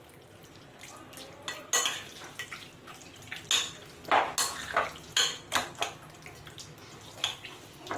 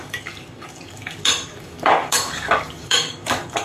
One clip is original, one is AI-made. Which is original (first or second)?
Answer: first